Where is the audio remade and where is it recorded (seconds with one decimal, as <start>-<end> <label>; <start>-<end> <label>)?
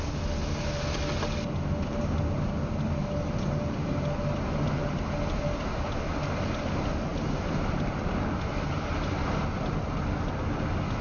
0.0-7.1 recorded; 7.1-8.3 remade; 8.3-11.0 recorded